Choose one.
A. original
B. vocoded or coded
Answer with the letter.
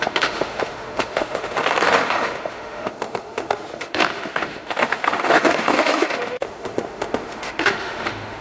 B